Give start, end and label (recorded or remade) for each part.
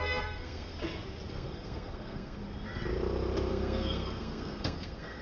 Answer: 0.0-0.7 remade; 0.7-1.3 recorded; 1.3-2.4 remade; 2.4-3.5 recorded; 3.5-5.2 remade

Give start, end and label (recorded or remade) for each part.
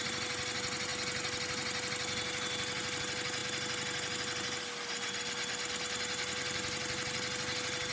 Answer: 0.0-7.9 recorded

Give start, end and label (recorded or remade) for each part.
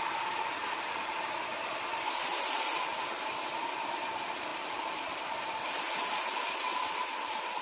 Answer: 0.0-7.6 recorded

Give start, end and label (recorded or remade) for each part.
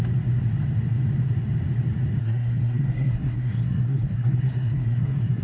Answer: 0.0-2.2 recorded; 2.2-5.4 remade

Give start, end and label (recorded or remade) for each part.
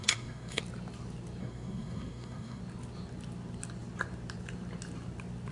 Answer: 0.0-0.6 remade; 0.6-1.4 recorded; 1.4-2.6 remade; 2.6-5.5 recorded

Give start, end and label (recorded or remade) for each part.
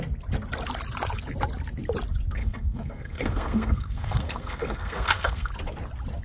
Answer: 0.0-2.4 recorded; 2.4-5.5 remade; 5.5-6.2 recorded